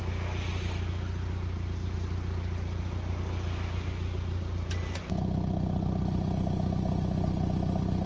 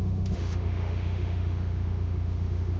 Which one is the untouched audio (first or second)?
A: first